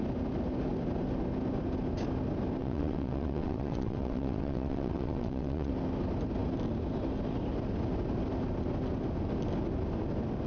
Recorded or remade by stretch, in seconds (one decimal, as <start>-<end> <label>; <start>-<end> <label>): 0.0-2.6 recorded; 2.6-5.7 remade; 5.7-10.5 recorded